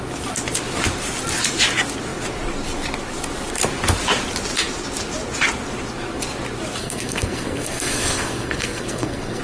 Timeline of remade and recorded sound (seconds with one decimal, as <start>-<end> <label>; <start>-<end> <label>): 0.0-6.8 recorded; 6.8-9.4 remade